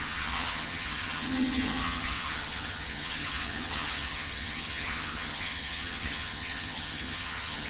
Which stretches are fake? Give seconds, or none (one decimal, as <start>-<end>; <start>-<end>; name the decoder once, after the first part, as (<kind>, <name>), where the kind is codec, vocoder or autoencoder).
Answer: 0.0-7.7 (vocoder, HiFi-GAN)